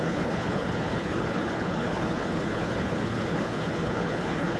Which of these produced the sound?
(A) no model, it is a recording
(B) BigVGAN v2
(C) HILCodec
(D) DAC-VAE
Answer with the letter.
C